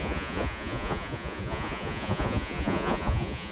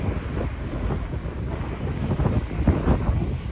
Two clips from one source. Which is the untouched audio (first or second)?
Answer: second